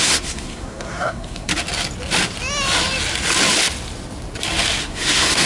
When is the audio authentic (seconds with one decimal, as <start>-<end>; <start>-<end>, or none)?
1.5-4.8